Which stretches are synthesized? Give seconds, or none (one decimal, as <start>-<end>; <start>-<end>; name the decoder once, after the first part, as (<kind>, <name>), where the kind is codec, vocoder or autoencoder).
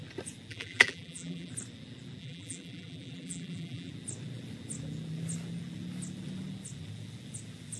0.5-1.5 (vocoder, BigVGAN v2); 2.2-3.9